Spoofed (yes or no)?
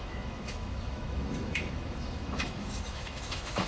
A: yes